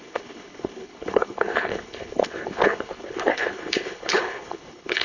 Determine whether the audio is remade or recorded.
remade